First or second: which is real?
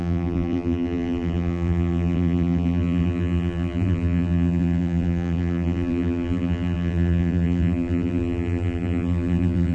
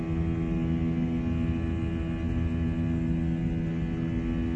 second